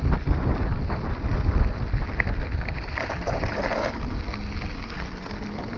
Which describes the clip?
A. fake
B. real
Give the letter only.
B